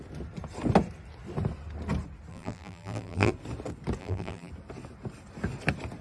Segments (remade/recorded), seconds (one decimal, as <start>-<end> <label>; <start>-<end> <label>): 0.0-2.3 recorded; 2.3-3.3 remade; 3.3-4.0 recorded; 4.0-4.5 remade; 4.5-6.0 recorded